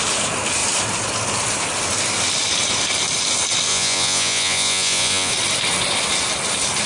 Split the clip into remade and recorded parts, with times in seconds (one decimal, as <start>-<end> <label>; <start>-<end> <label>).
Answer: 0.0-3.7 recorded; 3.7-5.3 remade; 5.3-6.9 recorded